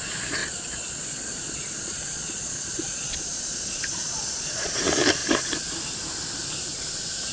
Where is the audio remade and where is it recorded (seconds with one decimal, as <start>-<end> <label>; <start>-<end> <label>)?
0.0-0.4 recorded; 0.4-4.7 remade; 4.7-7.3 recorded